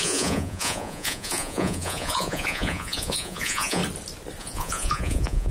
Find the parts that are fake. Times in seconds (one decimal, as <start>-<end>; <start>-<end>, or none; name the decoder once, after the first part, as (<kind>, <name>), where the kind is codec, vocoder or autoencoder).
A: 0.0-3.8 (vocoder, Vocos); 4.4-5.5